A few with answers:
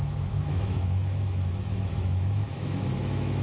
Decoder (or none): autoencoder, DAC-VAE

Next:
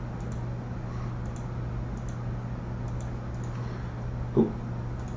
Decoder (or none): none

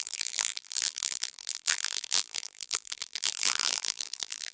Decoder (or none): vocoder, BigVGAN v2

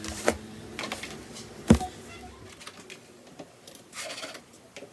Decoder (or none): vocoder, BigVGAN v2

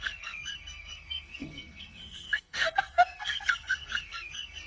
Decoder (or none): codec, SNAC